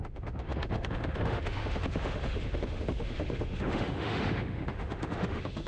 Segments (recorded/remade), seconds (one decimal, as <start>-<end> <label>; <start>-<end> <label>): 0.0-5.7 remade